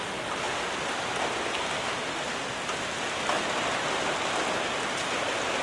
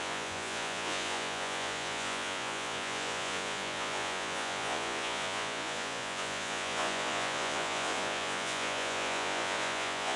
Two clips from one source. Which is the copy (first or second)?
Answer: second